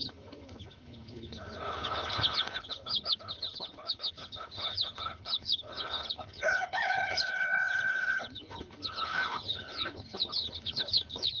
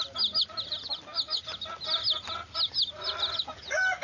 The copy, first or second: first